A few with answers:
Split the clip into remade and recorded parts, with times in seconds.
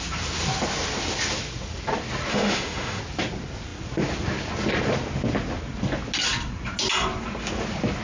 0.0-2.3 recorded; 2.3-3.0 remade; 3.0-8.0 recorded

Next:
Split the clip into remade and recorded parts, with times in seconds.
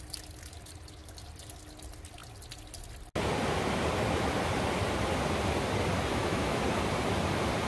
0.0-6.1 recorded; 6.1-6.6 remade; 6.6-7.7 recorded